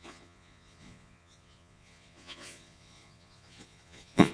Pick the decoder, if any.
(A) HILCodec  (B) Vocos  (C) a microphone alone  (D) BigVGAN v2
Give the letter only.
B